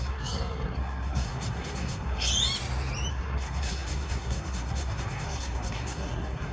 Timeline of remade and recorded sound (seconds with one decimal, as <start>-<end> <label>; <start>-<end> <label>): 0.0-2.3 remade; 2.3-3.1 recorded; 3.1-6.5 remade